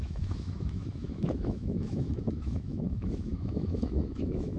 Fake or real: fake